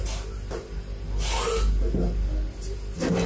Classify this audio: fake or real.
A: real